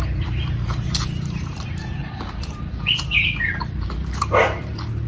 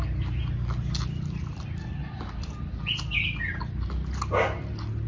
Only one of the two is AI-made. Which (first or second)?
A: first